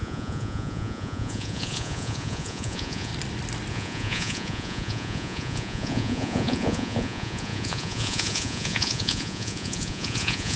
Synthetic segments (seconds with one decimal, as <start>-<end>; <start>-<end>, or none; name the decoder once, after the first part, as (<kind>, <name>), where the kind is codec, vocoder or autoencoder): 0.0-3.1 (vocoder, Vocos); 3.7-10.6